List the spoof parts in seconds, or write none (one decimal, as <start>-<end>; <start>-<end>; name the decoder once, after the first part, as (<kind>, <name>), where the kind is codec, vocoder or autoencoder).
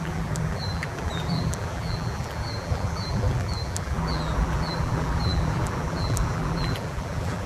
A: 0.0-7.5 (vocoder, BigVGAN v2)